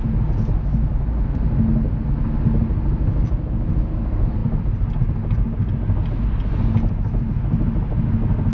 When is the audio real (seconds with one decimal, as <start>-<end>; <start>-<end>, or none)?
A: 0.0-8.5